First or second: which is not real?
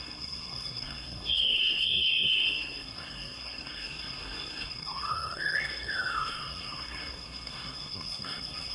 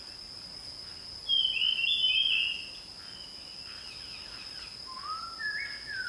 first